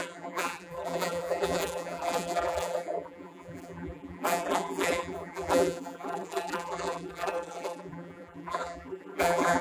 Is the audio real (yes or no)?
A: no